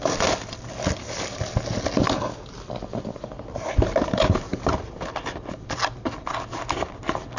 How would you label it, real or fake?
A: real